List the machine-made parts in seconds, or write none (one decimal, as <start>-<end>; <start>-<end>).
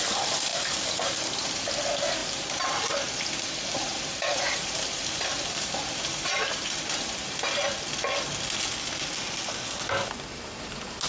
2.2-7.4